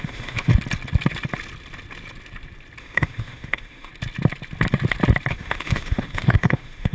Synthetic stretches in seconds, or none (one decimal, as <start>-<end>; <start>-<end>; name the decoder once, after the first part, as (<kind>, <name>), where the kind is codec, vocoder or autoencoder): 0.0-0.5 (autoencoder, DAC-VAE); 2.8-3.9; 5.3-6.9